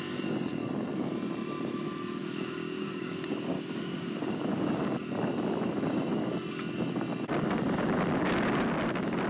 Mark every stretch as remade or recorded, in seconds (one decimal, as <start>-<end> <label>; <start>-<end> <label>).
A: 0.0-2.2 recorded; 2.2-4.8 remade; 4.8-9.3 recorded